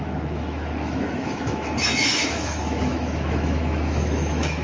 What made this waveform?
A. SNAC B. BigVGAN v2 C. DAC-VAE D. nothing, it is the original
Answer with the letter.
C